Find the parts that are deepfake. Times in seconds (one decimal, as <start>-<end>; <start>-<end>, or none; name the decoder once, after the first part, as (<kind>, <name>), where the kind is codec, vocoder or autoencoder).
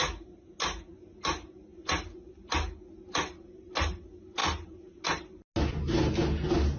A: none